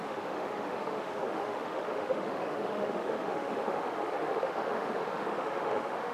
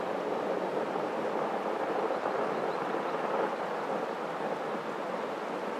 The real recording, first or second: second